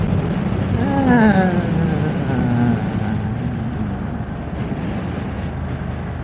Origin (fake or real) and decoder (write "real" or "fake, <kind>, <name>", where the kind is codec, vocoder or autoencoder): real